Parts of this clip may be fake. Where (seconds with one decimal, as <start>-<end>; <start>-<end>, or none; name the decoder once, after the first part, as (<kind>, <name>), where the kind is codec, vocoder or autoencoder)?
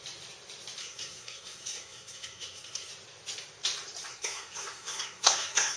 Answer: 0.8-2.9 (codec, SNAC); 4.1-5.8